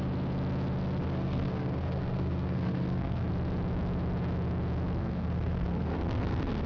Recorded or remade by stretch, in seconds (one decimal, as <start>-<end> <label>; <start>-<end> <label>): 0.0-1.0 recorded; 1.0-3.3 remade; 3.3-5.0 recorded; 5.0-6.7 remade